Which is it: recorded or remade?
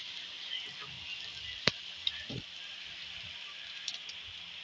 recorded